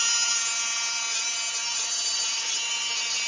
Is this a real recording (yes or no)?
yes